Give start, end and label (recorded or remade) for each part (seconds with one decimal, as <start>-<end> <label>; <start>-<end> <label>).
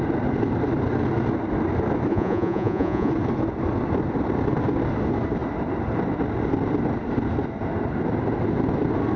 0.0-2.1 recorded; 2.1-3.1 remade; 3.1-9.2 recorded